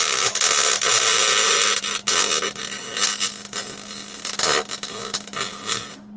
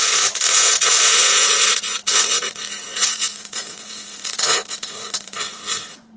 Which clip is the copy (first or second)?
second